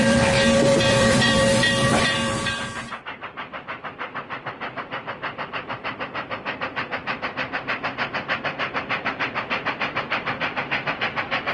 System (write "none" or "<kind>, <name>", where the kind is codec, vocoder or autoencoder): vocoder, BigVGAN v2